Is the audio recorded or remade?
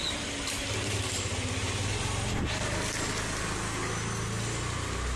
recorded